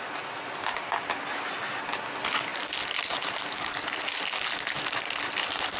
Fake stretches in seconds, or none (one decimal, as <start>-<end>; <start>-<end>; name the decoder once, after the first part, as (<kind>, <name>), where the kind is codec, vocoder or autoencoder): none